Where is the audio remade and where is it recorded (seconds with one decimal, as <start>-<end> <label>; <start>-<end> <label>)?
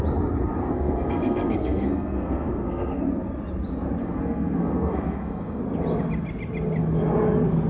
0.0-0.6 recorded; 0.6-3.0 remade; 3.0-4.0 recorded; 4.0-5.6 remade; 5.6-7.7 recorded